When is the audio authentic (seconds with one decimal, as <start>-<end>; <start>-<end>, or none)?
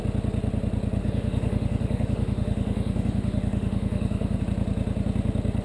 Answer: 0.0-1.0; 4.4-5.6